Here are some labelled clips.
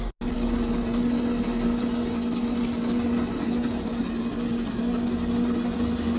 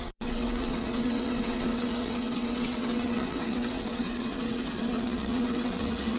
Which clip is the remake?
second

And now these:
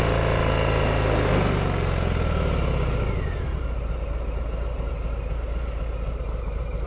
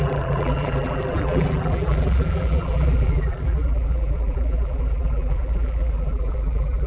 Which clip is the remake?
second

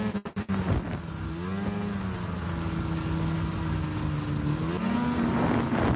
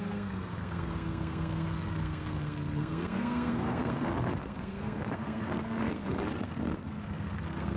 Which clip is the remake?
second